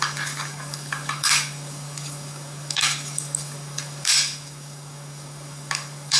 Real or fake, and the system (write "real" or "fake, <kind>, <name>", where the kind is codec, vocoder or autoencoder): fake, codec, DAC